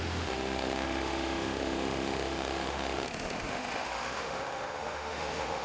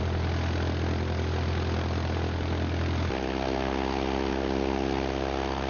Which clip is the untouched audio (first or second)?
second